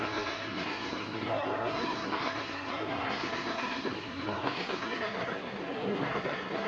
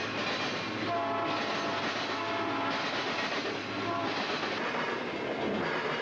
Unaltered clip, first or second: second